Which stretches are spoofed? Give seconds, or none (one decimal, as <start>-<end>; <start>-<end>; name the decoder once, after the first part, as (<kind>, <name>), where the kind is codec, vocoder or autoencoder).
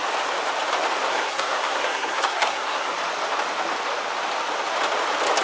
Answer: 1.1-2.9 (codec, SNAC)